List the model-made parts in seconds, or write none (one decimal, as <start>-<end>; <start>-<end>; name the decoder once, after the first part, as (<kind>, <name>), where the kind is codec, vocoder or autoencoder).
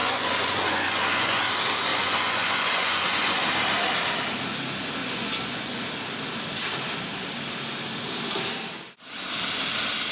0.0-1.4 (vocoder, Vocos); 1.9-3.4; 5.0-5.8